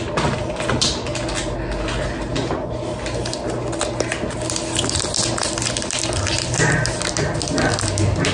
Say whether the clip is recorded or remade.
recorded